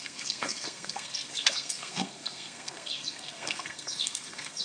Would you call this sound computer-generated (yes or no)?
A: yes